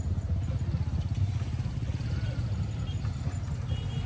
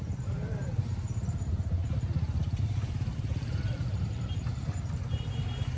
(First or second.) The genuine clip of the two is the first